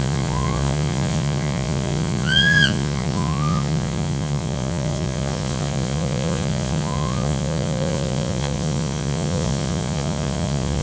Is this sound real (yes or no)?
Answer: no